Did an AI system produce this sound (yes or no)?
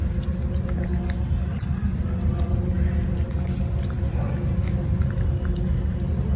no